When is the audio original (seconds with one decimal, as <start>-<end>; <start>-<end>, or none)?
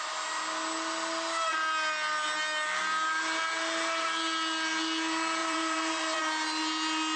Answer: 0.0-5.4; 6.2-7.2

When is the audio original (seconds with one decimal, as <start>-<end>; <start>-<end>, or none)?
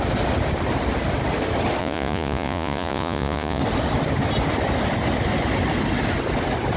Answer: 0.0-1.8; 3.6-6.8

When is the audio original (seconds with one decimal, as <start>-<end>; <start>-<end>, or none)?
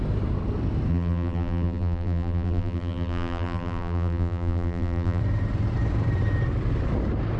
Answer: 0.0-0.9; 5.2-7.4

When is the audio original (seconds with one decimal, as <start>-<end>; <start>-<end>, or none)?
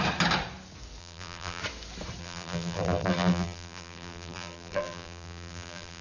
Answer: 0.0-1.0; 1.6-2.2